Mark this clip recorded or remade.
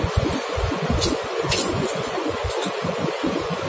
remade